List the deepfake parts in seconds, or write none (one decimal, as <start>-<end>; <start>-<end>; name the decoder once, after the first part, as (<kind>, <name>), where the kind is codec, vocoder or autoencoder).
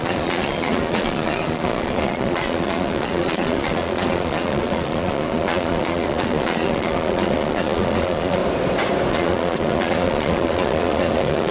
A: 0.0-8.4 (vocoder, Vocos); 9.1-11.5